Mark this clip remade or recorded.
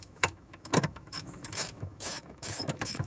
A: remade